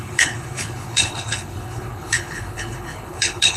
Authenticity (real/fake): fake